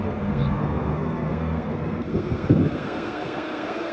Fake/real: fake